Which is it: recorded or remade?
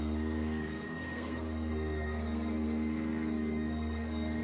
remade